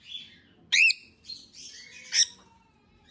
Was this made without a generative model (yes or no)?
yes